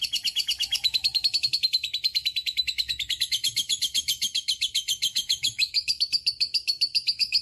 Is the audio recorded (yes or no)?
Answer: no